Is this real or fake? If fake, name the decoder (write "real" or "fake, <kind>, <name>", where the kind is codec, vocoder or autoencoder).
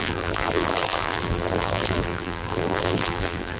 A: fake, vocoder, BigVGAN v2